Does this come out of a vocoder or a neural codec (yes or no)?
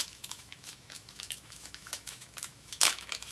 yes